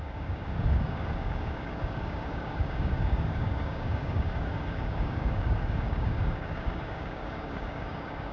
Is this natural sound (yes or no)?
no